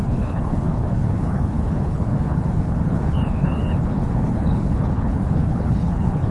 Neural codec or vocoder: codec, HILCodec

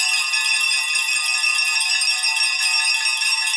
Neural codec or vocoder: none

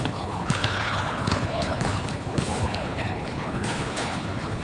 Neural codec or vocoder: codec, HILCodec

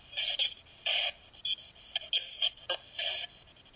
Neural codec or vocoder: none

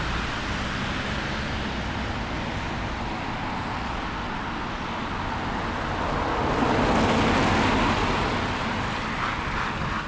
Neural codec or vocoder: none